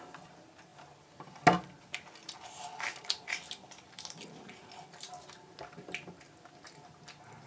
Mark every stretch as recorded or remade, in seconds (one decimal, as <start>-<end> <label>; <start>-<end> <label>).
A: 0.0-7.5 recorded